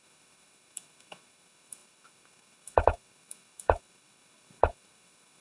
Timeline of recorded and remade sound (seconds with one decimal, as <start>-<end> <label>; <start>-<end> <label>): 0.0-5.4 remade